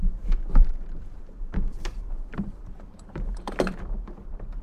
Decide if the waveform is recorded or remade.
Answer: remade